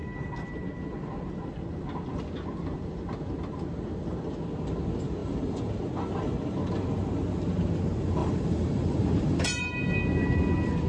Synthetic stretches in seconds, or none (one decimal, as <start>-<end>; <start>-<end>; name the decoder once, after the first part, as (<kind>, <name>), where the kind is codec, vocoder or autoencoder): 5.2-5.7 (vocoder, BigVGAN v2); 8.2-9.6